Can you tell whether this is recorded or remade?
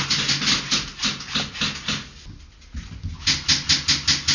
recorded